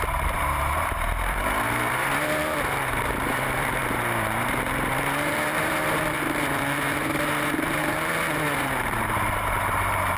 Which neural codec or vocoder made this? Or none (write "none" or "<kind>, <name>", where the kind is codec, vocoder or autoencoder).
vocoder, BigVGAN v2